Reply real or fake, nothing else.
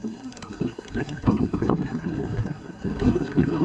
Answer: fake